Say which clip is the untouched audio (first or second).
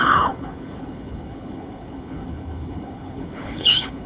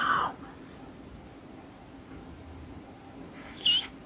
second